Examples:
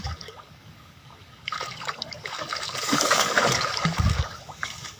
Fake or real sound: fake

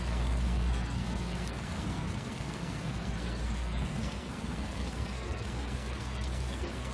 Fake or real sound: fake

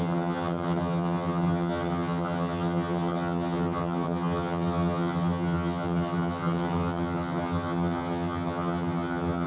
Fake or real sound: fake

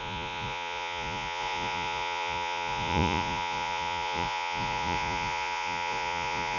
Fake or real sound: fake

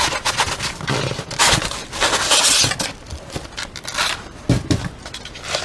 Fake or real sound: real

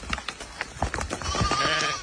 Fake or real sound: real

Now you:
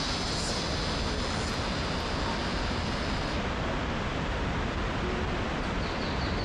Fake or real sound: real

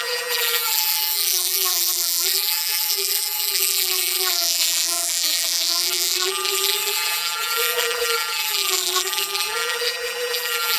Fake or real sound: fake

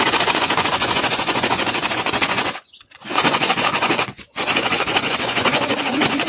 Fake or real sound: fake